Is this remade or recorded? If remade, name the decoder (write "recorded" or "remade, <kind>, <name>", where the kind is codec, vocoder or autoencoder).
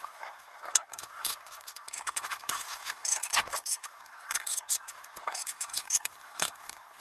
remade, codec, SNAC